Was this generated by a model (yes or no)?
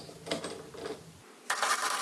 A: no